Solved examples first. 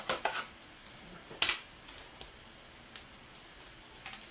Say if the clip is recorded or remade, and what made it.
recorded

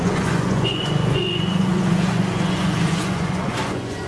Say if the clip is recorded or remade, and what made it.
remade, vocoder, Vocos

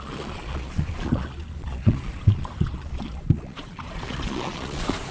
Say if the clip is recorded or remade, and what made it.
remade, vocoder, Vocos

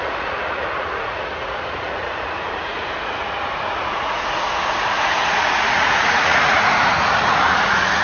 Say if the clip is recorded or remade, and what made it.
remade, vocoder, Vocos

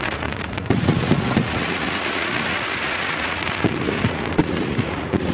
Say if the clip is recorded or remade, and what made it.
remade, vocoder, Vocos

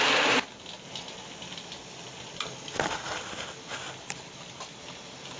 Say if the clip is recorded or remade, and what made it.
recorded